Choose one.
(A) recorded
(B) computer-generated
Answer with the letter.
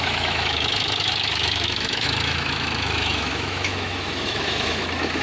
B